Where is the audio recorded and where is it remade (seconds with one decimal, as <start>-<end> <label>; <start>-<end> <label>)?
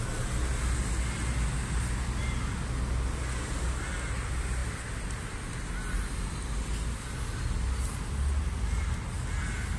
0.0-9.8 recorded